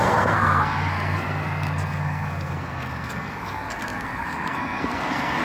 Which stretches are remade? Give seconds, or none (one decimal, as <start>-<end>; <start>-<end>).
0.0-5.4